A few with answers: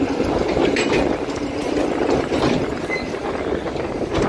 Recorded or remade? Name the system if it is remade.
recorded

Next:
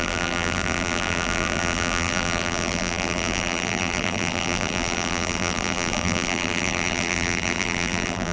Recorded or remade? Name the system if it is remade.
remade, vocoder, BigVGAN v2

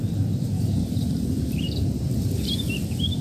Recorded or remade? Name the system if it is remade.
remade, vocoder, BigVGAN v2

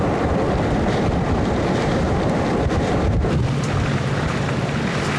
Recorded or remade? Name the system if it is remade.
remade, vocoder, BigVGAN v2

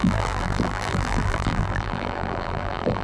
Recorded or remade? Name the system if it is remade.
remade, vocoder, BigVGAN v2